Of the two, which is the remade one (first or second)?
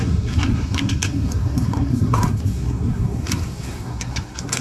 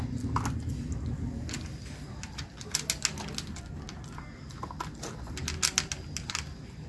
first